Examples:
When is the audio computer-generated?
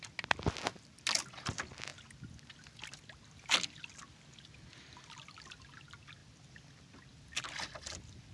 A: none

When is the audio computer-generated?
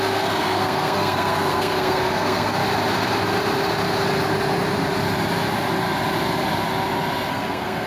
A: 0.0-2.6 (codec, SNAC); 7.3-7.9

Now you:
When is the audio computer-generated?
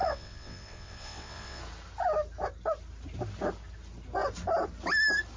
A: 0.0-1.6 (vocoder, WaveNeXt)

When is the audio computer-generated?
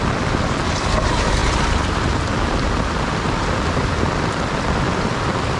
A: 0.0-5.6 (vocoder, BigVGAN v2)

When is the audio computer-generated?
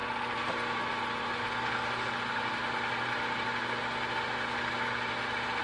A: none